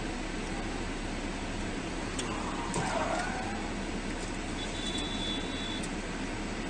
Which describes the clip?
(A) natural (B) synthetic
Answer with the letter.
A